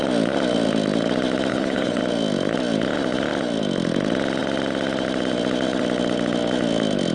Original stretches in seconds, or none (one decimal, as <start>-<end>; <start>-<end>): 0.0-1.5; 2.0-7.1